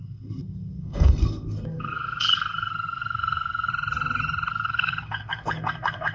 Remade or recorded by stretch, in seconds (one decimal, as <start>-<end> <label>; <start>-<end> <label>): 0.0-3.7 remade; 3.7-4.5 recorded; 4.5-6.1 remade